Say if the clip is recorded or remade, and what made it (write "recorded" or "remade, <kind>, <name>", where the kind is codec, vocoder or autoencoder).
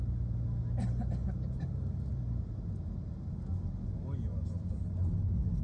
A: recorded